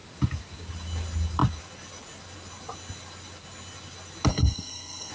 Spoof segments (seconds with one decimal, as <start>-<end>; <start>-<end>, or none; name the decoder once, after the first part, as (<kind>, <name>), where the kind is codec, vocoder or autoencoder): 4.3-5.1 (codec, SNAC)